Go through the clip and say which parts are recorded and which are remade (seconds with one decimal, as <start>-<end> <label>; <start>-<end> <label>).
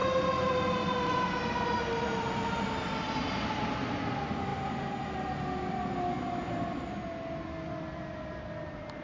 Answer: 0.0-9.0 recorded